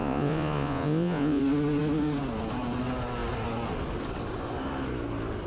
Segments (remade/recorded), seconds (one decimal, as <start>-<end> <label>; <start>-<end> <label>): 0.0-1.4 remade; 1.4-5.5 recorded